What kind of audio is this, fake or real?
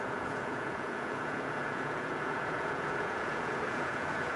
fake